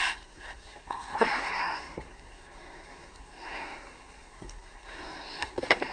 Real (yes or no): no